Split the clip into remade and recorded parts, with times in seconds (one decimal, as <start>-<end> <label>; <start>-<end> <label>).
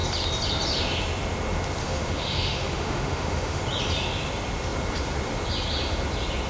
0.0-1.8 recorded; 1.8-3.6 remade; 3.6-6.5 recorded